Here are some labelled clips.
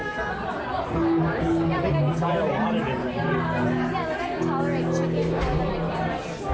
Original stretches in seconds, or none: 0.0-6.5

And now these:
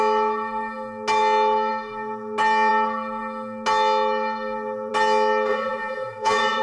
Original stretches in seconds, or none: 0.0-5.5